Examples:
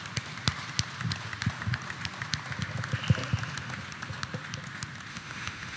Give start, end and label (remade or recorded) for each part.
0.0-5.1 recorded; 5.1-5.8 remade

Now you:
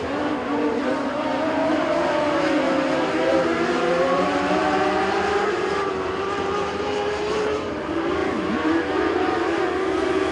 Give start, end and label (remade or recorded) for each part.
0.0-10.3 remade

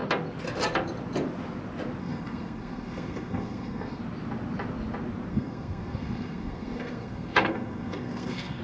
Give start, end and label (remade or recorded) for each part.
0.0-2.0 recorded; 2.0-4.0 remade; 4.0-5.3 recorded; 5.3-8.6 remade

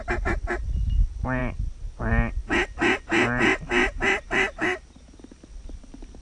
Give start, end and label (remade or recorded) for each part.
0.0-3.8 recorded; 3.8-5.2 remade; 5.2-6.2 recorded

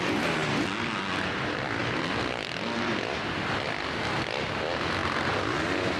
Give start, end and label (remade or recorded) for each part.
0.0-6.0 recorded

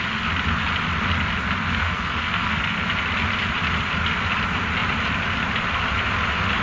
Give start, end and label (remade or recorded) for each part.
0.0-1.8 recorded; 1.8-2.9 remade; 2.9-6.6 recorded

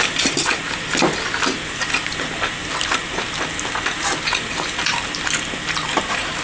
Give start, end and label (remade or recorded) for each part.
0.0-6.4 recorded